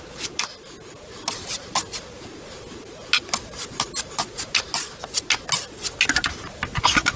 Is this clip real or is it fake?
real